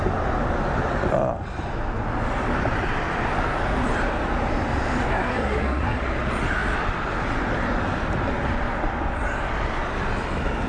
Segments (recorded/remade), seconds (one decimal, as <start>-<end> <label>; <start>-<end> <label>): 0.0-5.1 recorded; 5.1-6.0 remade; 6.0-10.7 recorded